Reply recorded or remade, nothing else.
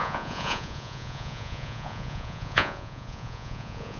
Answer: remade